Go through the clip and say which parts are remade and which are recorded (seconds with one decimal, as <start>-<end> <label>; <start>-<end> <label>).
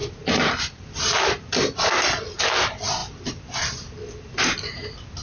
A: 0.0-5.2 recorded